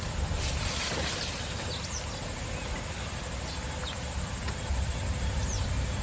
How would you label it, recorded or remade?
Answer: recorded